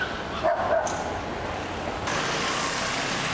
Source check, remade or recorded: remade